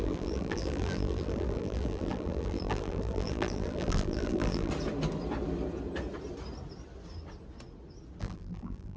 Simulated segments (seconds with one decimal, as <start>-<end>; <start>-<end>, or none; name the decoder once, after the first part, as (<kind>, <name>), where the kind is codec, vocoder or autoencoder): 0.0-4.7 (vocoder, BigVGAN v2); 8.2-9.0